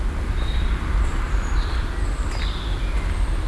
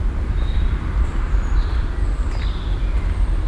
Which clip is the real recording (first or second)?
first